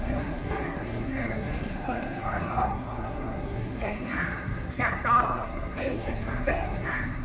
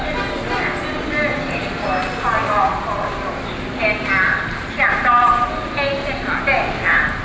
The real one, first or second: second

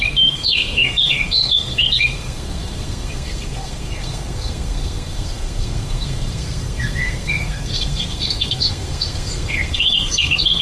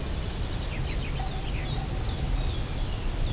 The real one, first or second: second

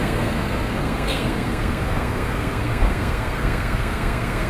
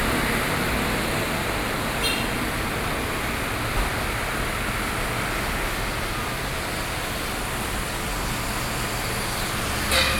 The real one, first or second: second